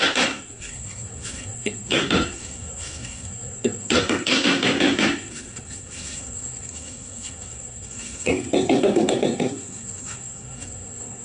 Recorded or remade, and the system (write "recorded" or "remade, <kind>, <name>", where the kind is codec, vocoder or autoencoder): remade, codec, SNAC